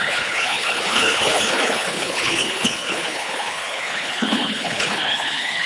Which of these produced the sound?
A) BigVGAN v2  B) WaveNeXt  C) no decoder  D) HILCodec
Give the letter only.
D